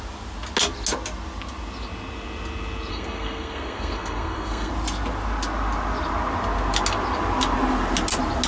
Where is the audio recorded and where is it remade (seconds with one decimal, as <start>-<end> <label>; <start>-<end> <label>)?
0.0-2.9 recorded; 2.9-4.7 remade; 4.7-8.5 recorded